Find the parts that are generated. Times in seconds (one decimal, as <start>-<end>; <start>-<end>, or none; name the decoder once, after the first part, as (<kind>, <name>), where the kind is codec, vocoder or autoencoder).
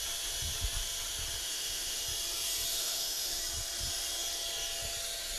1.4-2.0 (autoencoder, DAC-VAE); 2.7-3.4